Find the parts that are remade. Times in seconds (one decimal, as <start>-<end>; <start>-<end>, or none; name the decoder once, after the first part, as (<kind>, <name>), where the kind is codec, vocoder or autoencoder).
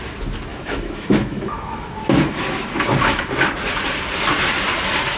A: 0.5-3.2 (autoencoder, DAC-VAE)